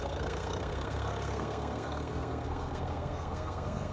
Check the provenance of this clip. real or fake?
fake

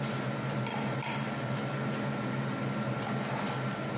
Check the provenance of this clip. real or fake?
real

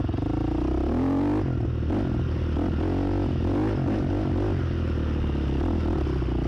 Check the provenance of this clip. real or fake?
real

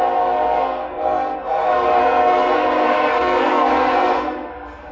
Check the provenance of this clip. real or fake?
fake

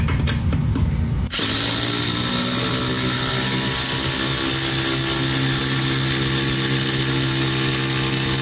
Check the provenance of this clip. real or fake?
real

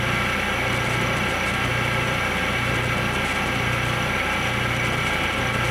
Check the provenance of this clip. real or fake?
real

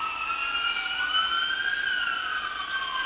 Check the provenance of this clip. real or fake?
real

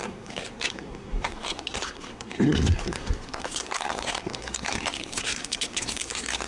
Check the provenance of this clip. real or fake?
fake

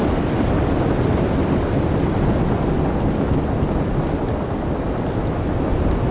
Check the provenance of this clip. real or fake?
real